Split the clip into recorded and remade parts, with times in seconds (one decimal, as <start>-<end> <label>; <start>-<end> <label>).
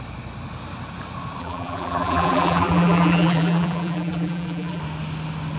0.0-1.4 recorded; 1.4-4.8 remade; 4.8-5.6 recorded